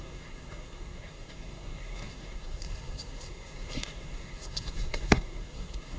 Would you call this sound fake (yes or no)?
yes